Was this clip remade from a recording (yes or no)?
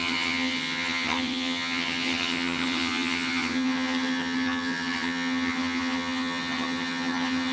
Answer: yes